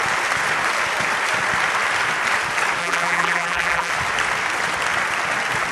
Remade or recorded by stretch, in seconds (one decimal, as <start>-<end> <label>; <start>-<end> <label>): 0.0-2.8 recorded; 2.8-3.9 remade; 3.9-5.7 recorded